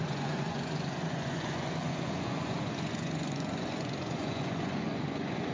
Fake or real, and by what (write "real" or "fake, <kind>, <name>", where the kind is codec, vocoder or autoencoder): fake, vocoder, Vocos